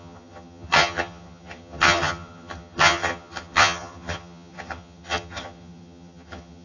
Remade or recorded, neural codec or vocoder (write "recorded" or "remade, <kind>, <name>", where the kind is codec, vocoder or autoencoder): remade, vocoder, HiFi-GAN